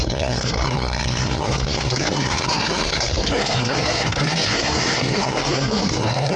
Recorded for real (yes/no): no